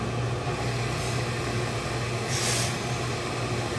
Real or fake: real